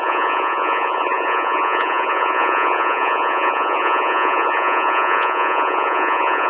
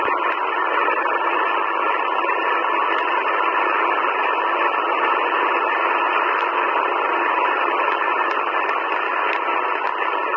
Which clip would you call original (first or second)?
second